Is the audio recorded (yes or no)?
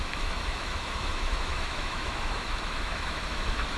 no